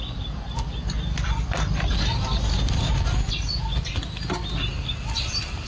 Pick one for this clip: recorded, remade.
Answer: recorded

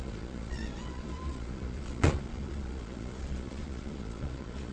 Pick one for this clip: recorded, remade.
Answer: remade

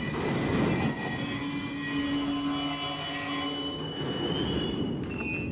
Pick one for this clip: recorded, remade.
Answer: recorded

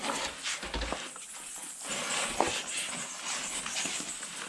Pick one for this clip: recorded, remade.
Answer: recorded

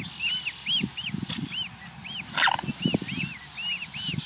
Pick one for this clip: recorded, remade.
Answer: recorded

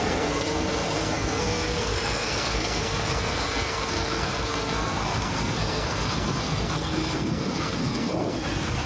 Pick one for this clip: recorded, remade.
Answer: remade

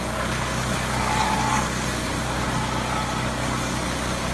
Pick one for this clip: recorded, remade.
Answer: remade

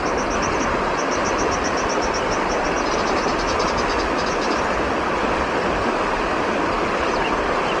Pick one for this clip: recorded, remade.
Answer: recorded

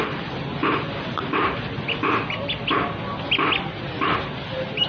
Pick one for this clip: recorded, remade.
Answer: recorded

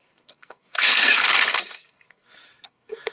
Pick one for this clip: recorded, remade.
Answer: remade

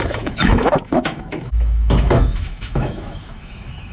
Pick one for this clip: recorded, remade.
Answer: remade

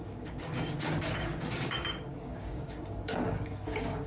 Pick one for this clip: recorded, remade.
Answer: remade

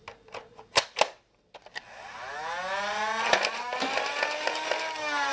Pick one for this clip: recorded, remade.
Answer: recorded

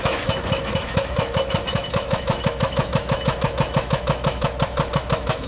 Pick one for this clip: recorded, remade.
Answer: remade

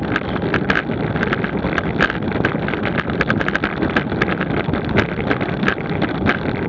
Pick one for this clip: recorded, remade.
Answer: recorded